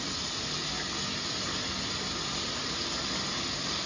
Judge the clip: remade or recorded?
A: recorded